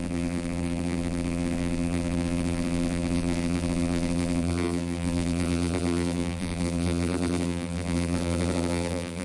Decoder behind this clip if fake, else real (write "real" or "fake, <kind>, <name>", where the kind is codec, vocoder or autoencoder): fake, vocoder, BigVGAN v2